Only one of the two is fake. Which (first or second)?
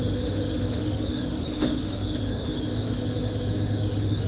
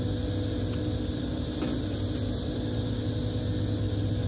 first